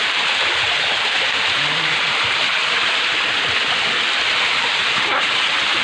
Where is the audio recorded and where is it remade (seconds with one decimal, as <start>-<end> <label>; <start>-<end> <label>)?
0.0-2.4 remade; 2.4-4.3 recorded; 4.3-5.8 remade